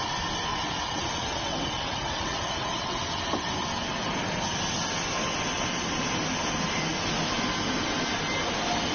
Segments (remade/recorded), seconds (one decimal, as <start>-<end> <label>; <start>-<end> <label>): 0.0-0.5 recorded; 0.5-3.0 remade; 3.0-8.9 recorded